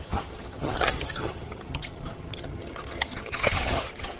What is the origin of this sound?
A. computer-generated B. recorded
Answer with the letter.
A